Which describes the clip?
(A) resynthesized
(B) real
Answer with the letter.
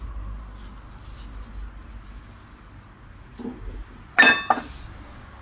B